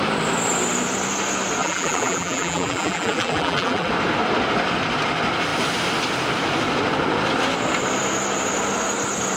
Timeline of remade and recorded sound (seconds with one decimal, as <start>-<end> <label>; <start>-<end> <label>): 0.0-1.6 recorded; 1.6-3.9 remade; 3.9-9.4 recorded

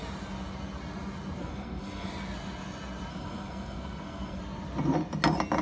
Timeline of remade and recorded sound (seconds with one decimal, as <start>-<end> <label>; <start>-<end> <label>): 0.0-1.4 recorded; 1.4-2.1 remade; 2.1-3.1 recorded; 3.1-4.4 remade; 4.4-5.6 recorded

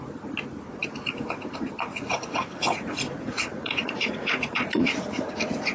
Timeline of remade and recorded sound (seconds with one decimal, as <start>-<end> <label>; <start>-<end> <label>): 0.0-1.9 recorded; 1.9-5.3 remade; 5.3-5.7 recorded

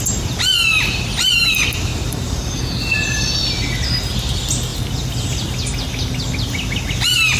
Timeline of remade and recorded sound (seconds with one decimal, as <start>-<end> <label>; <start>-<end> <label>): 0.0-7.4 recorded

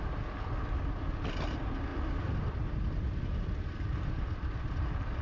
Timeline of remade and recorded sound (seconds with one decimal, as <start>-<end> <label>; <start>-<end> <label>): 0.0-1.9 recorded; 1.9-5.2 remade

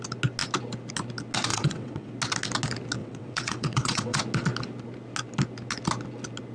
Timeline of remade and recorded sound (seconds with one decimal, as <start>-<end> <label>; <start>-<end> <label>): 0.0-1.5 recorded; 1.5-2.1 remade; 2.1-3.0 recorded; 3.0-4.2 remade; 4.2-6.5 recorded